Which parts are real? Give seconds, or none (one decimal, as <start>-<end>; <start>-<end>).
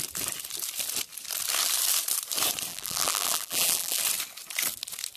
0.0-2.7; 4.0-5.2